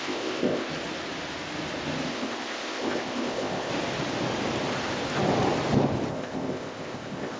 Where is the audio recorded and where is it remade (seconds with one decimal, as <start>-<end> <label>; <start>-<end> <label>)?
0.0-0.7 remade; 0.7-2.1 recorded; 2.1-3.7 remade; 3.7-6.1 recorded; 6.1-7.4 remade